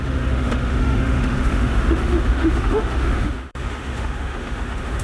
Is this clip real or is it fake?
fake